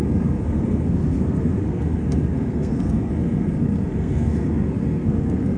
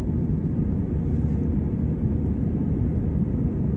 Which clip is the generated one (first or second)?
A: first